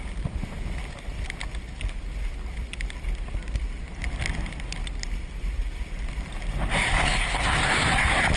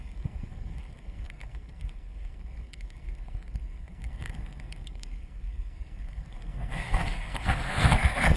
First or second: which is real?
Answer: first